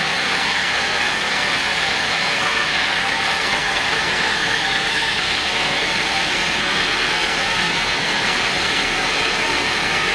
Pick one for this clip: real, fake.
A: fake